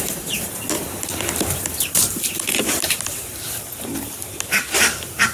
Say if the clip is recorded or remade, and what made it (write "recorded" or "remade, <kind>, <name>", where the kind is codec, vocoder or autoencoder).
remade, vocoder, BigVGAN v2